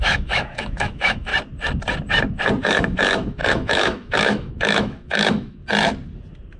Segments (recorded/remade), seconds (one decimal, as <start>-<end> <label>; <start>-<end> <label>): 0.0-1.3 remade; 1.3-2.6 recorded; 2.6-5.6 remade; 5.6-6.6 recorded